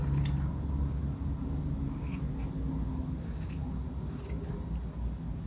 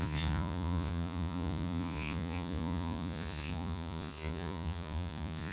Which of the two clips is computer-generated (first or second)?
second